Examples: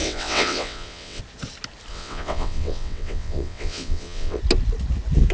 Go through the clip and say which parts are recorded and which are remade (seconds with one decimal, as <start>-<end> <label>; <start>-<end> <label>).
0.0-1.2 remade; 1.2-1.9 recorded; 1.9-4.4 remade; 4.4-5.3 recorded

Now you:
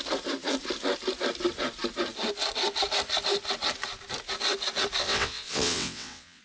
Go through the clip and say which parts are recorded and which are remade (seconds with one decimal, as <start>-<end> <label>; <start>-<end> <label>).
0.0-5.0 recorded; 5.0-6.4 remade

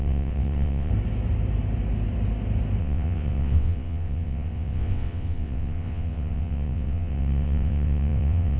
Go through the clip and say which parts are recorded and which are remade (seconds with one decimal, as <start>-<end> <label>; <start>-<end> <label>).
0.0-0.9 remade; 0.9-2.8 recorded; 2.8-8.6 remade

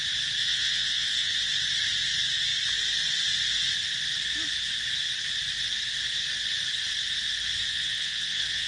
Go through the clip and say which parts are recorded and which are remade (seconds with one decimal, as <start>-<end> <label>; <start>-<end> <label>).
0.0-0.5 recorded; 0.5-1.3 remade; 1.3-7.7 recorded; 7.7-8.7 remade